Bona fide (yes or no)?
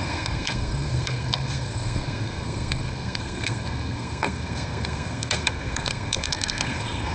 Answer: no